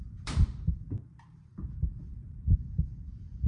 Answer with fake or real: fake